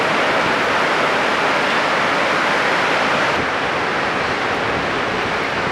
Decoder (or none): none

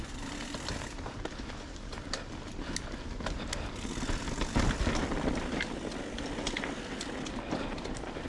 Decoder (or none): none